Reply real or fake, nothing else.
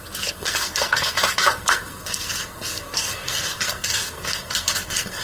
fake